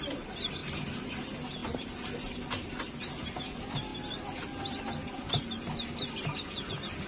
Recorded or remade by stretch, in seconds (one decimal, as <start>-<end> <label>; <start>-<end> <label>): 0.0-0.6 recorded; 0.6-1.1 remade; 1.1-7.1 recorded